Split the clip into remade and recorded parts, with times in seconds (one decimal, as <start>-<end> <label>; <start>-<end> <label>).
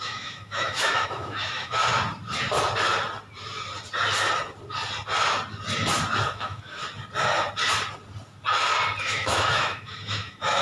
0.0-1.8 remade; 1.8-6.2 recorded; 6.2-6.8 remade; 6.8-9.0 recorded; 9.0-10.6 remade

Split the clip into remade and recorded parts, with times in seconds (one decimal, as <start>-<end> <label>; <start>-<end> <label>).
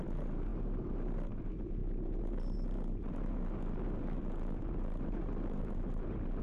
0.0-6.4 recorded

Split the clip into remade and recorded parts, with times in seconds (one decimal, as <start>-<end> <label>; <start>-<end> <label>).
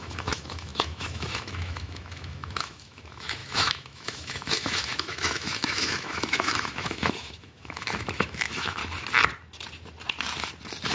0.0-8.8 remade; 8.8-10.9 recorded